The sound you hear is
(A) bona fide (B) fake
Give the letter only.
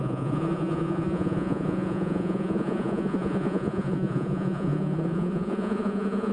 B